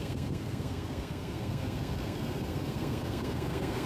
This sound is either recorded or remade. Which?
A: remade